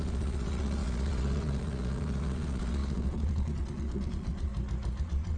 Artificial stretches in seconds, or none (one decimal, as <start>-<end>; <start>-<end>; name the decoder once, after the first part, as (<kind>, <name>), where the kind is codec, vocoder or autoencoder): 0.0-4.5 (vocoder, Vocos); 5.0-5.4